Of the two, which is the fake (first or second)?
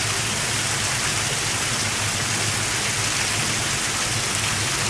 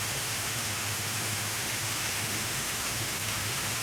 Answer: second